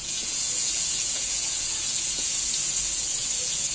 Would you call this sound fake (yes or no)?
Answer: yes